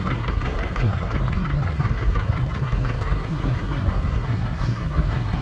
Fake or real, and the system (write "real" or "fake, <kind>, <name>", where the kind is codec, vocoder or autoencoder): fake, codec, SNAC